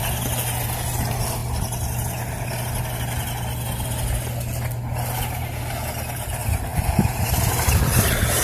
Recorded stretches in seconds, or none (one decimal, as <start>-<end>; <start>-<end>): 0.0-6.7